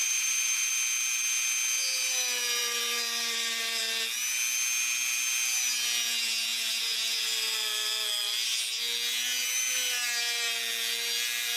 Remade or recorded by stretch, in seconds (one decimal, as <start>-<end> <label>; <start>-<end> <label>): 0.0-0.7 remade; 0.7-2.6 recorded; 2.6-3.8 remade; 3.8-11.6 recorded